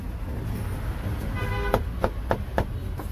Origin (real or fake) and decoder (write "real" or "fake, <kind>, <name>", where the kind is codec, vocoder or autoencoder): real